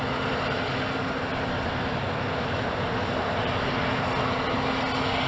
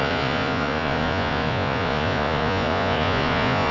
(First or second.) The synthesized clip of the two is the second